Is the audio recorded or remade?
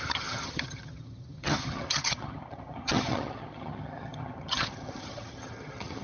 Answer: remade